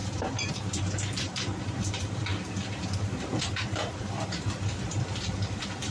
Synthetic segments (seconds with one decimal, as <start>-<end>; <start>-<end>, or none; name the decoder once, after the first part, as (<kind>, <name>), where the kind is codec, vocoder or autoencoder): 0.0-5.9 (vocoder, BigVGAN v2)